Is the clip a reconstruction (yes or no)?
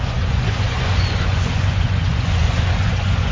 yes